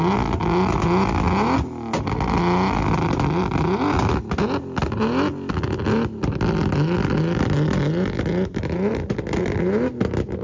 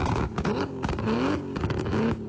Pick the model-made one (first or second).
second